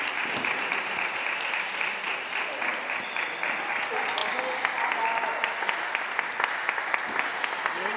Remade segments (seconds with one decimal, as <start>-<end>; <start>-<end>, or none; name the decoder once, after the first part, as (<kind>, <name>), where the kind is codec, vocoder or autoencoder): none